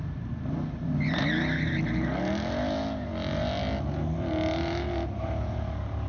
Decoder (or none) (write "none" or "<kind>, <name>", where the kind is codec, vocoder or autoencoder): none